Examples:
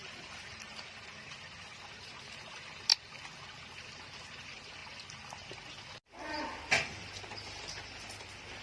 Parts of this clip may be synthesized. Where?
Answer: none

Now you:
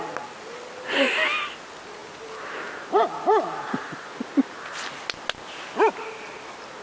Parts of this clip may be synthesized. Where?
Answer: none

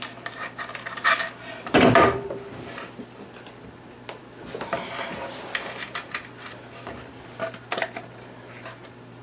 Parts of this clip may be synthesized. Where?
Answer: none

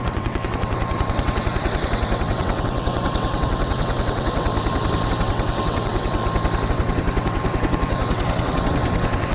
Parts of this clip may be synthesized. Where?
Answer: 0.0-4.5 (vocoder, WaveNeXt); 5.1-6.2; 6.7-9.3

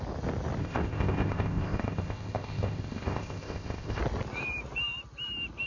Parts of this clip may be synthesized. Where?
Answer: 0.6-4.0 (codec, ZipCodec)

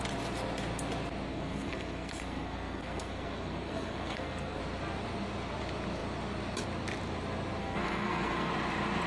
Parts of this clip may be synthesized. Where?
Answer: 1.3-4.6 (codec, SNAC); 7.6-8.5

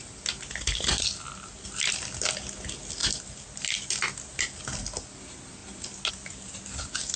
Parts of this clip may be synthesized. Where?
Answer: none